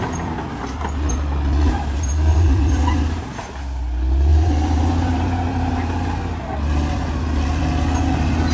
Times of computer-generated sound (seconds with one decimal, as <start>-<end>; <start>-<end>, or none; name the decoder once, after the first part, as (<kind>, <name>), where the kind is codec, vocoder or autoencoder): 2.3-3.2 (vocoder, BigVGAN v2); 4.3-5.7